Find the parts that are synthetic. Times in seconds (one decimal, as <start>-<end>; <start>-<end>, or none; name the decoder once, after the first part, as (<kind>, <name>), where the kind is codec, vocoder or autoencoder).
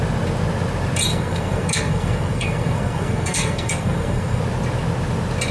1.1-4.4 (codec, SNAC)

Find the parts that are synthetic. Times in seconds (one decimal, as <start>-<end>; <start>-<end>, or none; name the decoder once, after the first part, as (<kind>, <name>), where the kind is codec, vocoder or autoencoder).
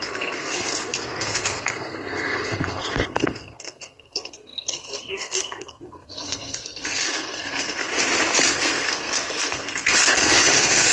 0.0-7.9 (codec, SNAC); 8.5-10.9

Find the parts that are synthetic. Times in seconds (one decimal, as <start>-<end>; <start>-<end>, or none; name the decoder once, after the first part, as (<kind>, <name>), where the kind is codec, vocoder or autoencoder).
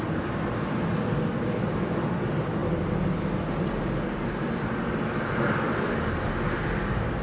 none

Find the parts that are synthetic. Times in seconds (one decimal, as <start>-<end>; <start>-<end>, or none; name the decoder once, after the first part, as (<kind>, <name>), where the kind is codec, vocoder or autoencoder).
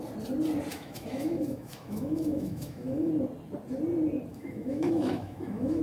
0.7-3.1 (autoencoder, DAC-VAE); 4.3-5.8